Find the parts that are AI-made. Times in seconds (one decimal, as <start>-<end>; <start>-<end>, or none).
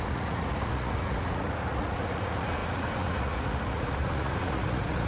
0.0-5.1